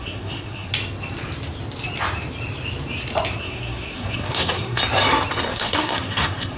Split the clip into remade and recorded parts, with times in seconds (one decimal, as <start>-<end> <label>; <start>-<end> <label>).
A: 0.0-0.7 remade; 0.7-3.4 recorded; 3.4-4.8 remade; 4.8-5.5 recorded; 5.5-6.6 remade